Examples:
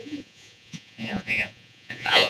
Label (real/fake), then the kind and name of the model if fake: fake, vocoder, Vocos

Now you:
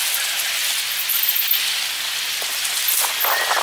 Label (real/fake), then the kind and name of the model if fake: real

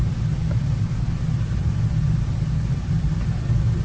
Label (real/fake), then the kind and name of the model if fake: real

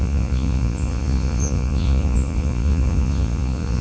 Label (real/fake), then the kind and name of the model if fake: fake, vocoder, Vocos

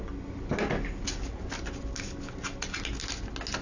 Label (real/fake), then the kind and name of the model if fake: real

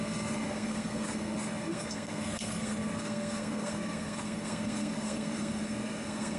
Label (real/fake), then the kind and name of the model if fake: fake, codec, SNAC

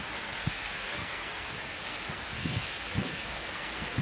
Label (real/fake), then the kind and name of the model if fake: fake, codec, SNAC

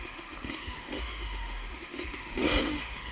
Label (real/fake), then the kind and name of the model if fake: fake, autoencoder, DAC-VAE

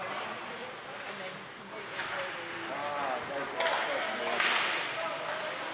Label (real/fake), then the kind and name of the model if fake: real